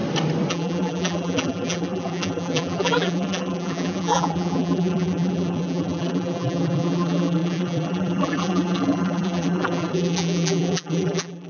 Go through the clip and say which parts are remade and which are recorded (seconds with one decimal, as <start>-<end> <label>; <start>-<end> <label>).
0.0-0.5 recorded; 0.5-11.5 remade